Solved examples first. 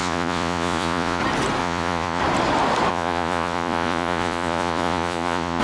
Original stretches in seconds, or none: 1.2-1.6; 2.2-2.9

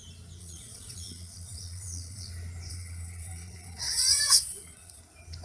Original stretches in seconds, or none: 0.0-0.4; 2.3-2.7; 5.0-5.4

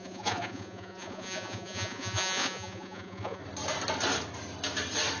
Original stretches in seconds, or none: 3.4-5.2

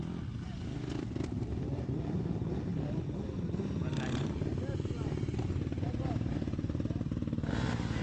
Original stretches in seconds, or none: 0.0-8.0

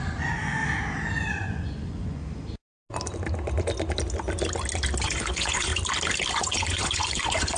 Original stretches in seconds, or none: 0.6-1.3; 2.2-5.0; 5.7-6.3

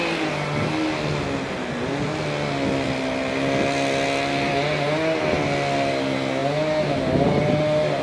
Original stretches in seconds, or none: 0.0-8.0